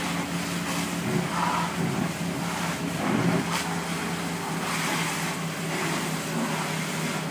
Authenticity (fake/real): real